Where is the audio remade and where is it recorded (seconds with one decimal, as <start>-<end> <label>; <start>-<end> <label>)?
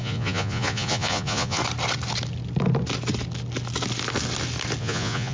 0.0-1.6 remade; 1.6-4.8 recorded; 4.8-5.3 remade